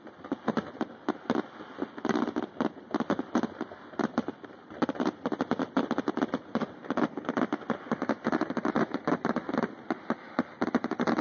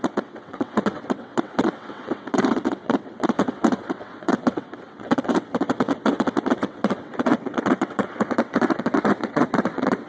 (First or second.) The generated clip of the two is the second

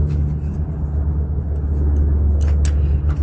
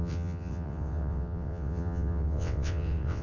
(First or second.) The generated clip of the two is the second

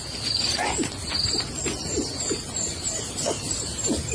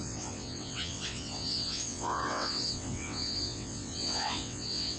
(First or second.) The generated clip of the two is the second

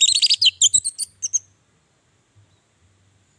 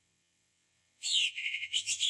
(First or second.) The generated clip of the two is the second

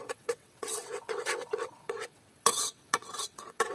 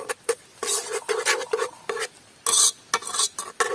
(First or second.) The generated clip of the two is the first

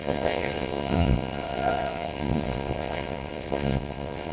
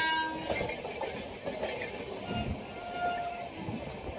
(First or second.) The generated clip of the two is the first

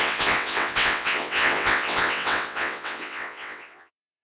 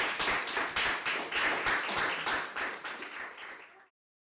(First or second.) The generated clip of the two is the first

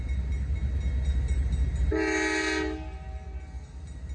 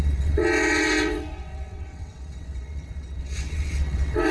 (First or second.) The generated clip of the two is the second